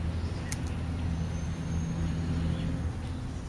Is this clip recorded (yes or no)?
yes